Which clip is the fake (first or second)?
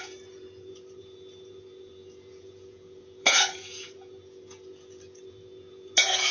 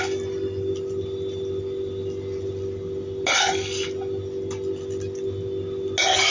first